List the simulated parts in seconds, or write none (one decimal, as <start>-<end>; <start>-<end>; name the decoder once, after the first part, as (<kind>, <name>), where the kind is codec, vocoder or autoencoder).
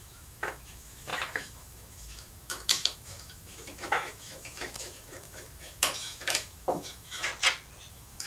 0.0-7.3 (autoencoder, DAC-VAE); 7.9-8.3